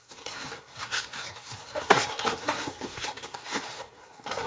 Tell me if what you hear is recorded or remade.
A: remade